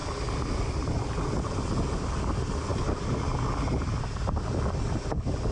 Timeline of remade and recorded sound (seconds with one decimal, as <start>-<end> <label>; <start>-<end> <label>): 0.0-5.5 recorded